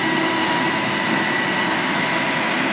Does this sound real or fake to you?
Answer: real